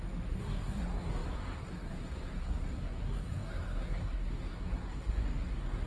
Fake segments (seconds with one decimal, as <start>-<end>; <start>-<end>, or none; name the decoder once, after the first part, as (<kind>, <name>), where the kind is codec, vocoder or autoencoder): 0.0-5.9 (codec, SNAC)